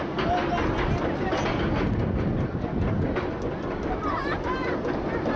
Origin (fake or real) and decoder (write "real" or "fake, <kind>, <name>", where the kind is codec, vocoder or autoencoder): real